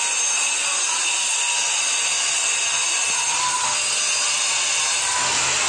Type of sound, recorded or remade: recorded